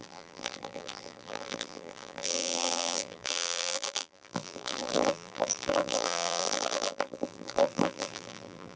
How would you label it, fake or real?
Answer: fake